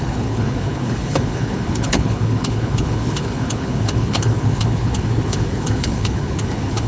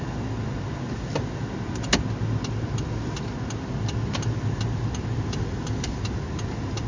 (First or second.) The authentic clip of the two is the second